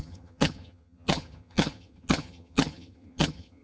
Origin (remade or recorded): remade